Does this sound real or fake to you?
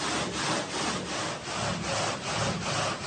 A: real